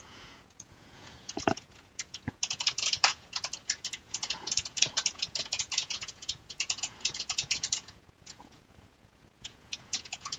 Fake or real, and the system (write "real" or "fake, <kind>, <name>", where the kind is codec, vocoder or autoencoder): fake, vocoder, Vocos